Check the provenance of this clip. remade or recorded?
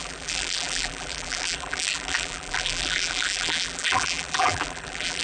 remade